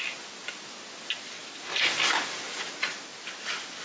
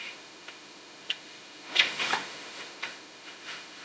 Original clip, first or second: first